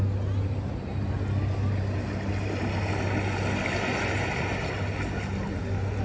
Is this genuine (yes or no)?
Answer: yes